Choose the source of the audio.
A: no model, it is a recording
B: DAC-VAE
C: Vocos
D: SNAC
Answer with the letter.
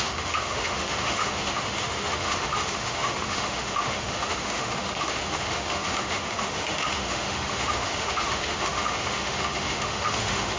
B